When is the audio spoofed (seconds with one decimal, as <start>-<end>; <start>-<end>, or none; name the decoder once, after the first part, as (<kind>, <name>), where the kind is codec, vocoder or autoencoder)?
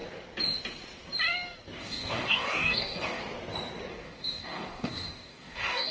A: 1.8-3.2 (codec, DAC); 3.9-5.9